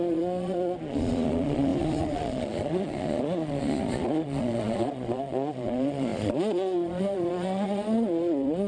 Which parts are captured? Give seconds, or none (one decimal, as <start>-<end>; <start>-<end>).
none